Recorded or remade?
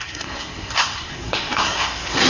remade